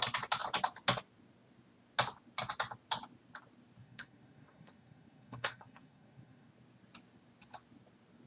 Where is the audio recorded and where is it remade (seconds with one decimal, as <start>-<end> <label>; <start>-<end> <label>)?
0.0-3.8 recorded; 3.8-6.5 remade; 6.5-8.3 recorded